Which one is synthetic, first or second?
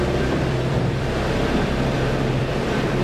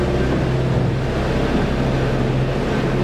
first